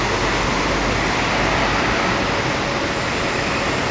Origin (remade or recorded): recorded